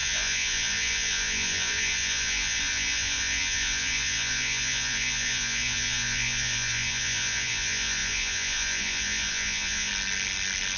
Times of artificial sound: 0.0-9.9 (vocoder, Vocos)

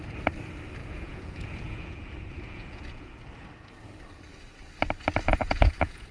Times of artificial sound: 0.8-3.1 (vocoder, Vocos); 5.3-6.1

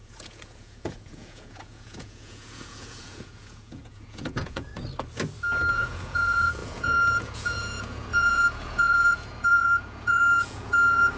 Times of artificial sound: 0.0-4.7 (vocoder, Vocos); 5.7-11.2

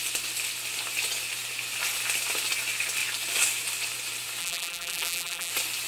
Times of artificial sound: 4.4-5.5 (vocoder, BigVGAN v2)

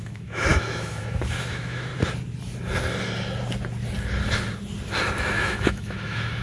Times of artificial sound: 0.0-1.9 (autoencoder, DAC-VAE); 5.2-6.4

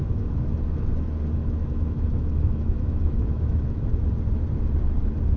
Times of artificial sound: 0.0-0.8 (autoencoder, DAC-VAE); 1.4-4.1

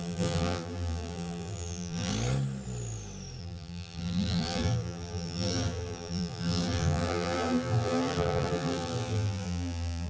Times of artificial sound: 0.0-2.1 (vocoder, BigVGAN v2); 3.4-10.1

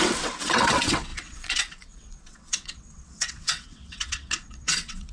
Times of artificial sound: 0.0-5.1 (vocoder, WaveNeXt)